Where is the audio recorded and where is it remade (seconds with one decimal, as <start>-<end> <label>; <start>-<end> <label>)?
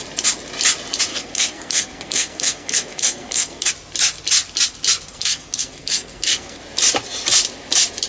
0.0-1.1 recorded; 1.1-3.7 remade; 3.7-5.1 recorded; 5.1-6.6 remade; 6.6-8.1 recorded